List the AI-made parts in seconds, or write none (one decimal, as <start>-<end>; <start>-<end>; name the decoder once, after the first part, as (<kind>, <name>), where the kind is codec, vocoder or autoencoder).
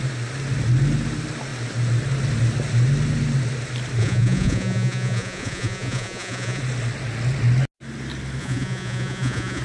4.0-6.6 (vocoder, Vocos); 8.4-9.6